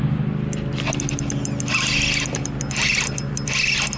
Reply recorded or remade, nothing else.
recorded